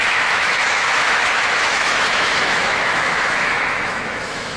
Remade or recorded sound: remade